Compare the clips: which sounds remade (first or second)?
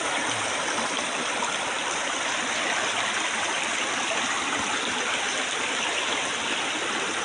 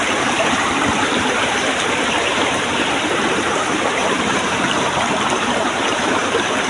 second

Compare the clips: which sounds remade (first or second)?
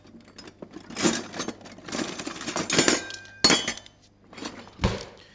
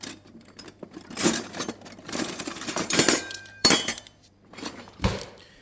second